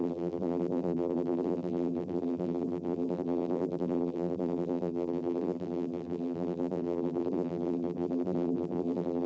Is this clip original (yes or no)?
no